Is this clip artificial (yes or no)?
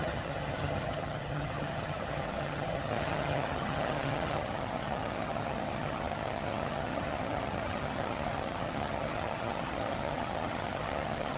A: yes